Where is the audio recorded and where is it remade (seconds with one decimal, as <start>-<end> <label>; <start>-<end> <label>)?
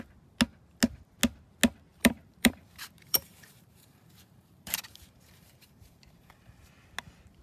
0.0-1.9 recorded; 1.9-6.3 remade; 6.3-7.4 recorded